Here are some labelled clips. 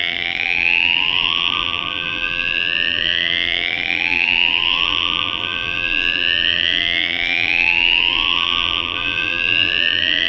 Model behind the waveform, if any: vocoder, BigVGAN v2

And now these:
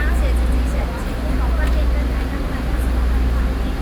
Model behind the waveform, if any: none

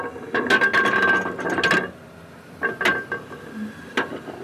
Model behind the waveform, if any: none